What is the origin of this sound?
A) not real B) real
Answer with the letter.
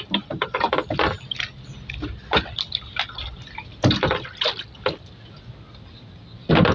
B